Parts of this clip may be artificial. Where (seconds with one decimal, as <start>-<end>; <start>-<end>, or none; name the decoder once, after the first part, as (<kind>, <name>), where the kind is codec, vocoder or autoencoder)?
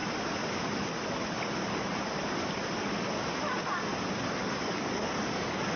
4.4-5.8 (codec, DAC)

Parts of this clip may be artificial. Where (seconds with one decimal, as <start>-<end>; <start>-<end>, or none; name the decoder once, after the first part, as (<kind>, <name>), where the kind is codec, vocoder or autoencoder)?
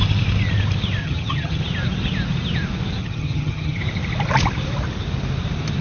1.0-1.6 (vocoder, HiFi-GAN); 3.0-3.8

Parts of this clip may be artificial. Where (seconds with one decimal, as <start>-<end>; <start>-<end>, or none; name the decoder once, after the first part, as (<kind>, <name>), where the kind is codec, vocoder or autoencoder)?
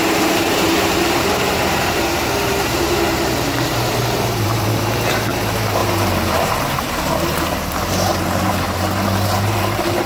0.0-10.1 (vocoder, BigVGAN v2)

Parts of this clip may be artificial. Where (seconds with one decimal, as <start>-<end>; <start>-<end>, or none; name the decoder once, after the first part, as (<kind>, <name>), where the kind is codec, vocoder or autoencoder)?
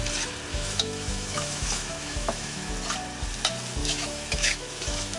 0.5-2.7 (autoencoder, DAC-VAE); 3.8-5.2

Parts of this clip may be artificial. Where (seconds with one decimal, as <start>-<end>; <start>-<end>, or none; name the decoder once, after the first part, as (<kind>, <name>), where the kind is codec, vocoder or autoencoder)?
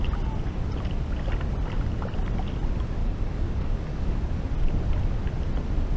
3.0-4.2 (codec, DAC)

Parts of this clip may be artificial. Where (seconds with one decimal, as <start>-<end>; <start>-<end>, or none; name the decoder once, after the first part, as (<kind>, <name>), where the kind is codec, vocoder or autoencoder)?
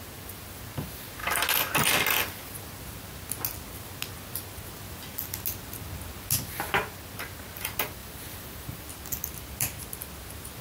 8.0-8.9 (vocoder, BigVGAN v2)